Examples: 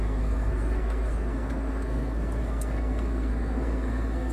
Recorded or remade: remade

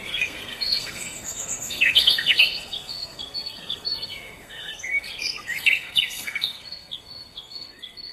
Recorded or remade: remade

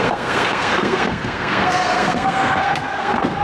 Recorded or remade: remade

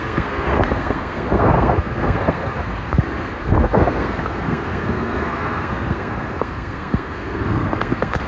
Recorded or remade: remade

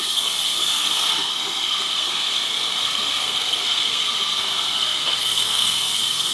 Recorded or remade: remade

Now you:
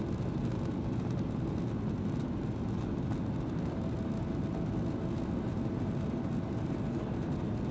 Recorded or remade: recorded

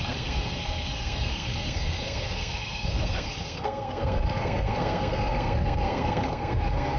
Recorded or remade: remade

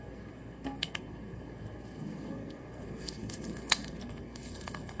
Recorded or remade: remade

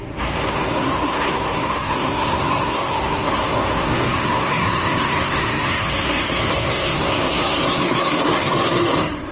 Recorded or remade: remade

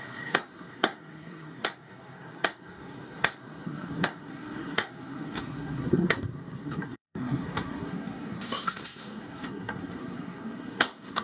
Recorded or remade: remade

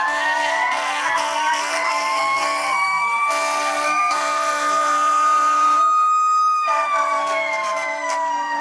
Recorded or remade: remade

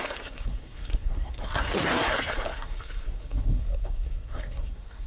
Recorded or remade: remade